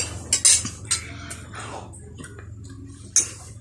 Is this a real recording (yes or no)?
yes